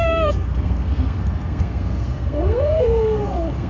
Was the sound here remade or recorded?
remade